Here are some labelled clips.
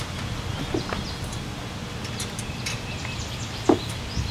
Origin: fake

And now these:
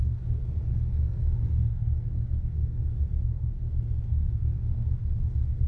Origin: fake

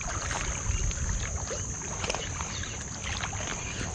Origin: real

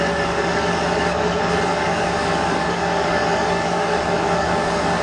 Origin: fake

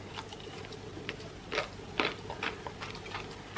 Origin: real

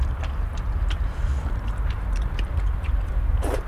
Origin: fake